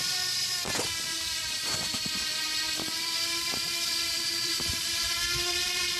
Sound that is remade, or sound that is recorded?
remade